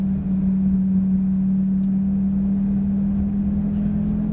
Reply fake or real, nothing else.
real